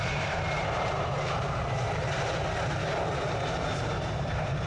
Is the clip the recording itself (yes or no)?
no